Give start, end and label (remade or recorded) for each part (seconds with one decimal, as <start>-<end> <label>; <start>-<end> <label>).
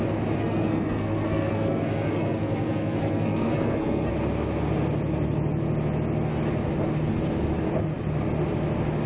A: 0.0-0.4 recorded; 0.4-4.1 remade; 4.1-9.1 recorded